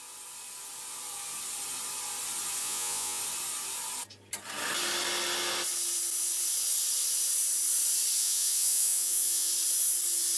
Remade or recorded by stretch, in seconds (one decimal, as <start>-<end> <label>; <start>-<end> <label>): 0.0-2.6 recorded; 2.6-3.2 remade; 3.2-8.2 recorded; 8.2-9.5 remade; 9.5-10.4 recorded